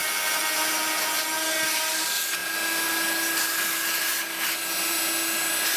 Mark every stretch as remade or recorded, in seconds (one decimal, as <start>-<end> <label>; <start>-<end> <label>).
0.0-5.8 recorded